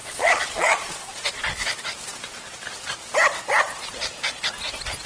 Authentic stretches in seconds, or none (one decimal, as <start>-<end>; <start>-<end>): 1.3-5.1